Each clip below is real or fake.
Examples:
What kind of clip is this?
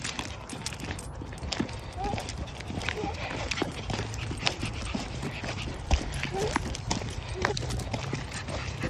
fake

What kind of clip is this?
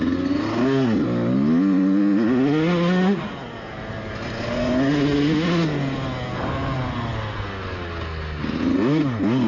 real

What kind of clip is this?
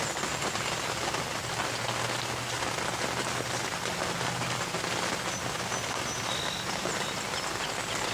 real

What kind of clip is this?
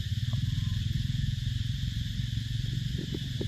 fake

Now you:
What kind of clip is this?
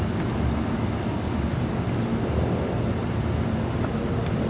real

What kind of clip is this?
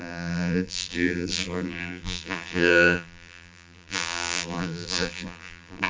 fake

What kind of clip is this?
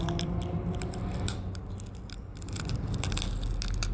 real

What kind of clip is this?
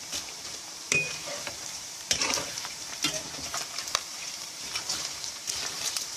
fake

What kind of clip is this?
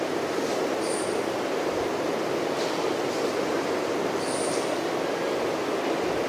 real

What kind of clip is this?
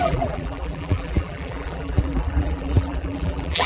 fake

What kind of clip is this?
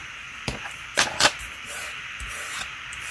fake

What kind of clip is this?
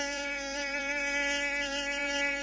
fake